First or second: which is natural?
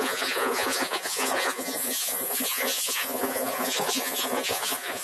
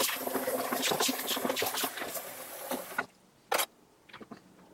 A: second